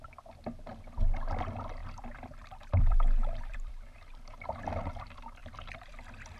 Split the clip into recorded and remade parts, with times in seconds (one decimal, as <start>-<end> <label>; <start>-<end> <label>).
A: 0.0-1.8 recorded; 1.8-4.6 remade; 4.6-5.4 recorded; 5.4-5.9 remade; 5.9-6.4 recorded